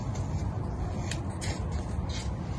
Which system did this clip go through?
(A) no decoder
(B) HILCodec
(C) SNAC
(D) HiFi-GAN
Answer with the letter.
A